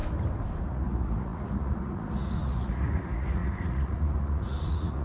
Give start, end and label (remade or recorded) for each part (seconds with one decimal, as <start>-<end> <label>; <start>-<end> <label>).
0.0-0.6 recorded; 0.6-5.0 remade